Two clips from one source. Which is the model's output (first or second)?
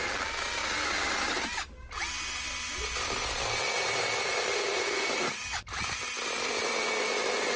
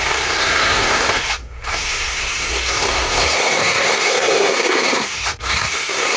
second